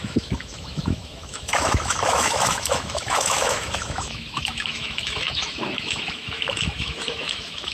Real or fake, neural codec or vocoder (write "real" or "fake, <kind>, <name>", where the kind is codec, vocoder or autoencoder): fake, autoencoder, DAC-VAE